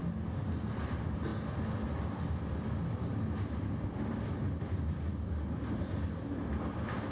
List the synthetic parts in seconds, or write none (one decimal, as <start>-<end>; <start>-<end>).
none